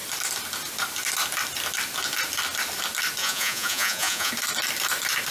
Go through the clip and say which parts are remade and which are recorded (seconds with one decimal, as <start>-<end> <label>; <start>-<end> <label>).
0.0-3.2 recorded; 3.2-4.3 remade; 4.3-5.3 recorded